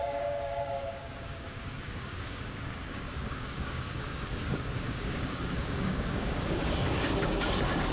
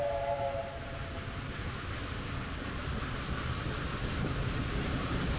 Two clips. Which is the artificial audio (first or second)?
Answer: first